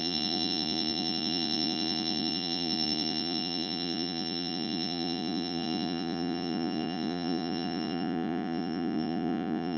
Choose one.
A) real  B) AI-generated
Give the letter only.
B